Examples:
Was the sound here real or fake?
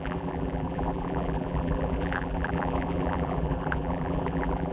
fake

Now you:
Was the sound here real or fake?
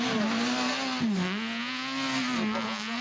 real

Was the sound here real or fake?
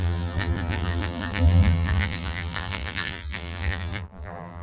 fake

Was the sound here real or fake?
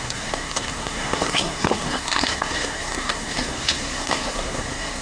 fake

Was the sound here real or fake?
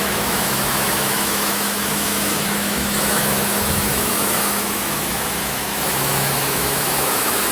fake